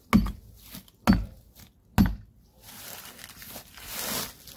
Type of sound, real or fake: real